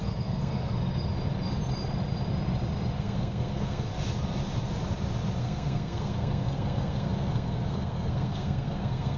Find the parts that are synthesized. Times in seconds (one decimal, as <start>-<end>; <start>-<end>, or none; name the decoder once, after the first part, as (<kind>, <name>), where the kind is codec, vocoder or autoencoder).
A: 0.0-0.7 (codec, SNAC); 3.0-3.9; 5.4-9.2